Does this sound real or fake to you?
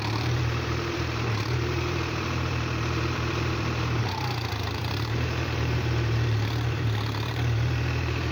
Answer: fake